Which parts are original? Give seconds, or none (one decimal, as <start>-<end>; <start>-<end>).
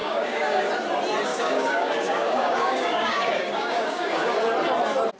0.7-1.3; 4.4-5.2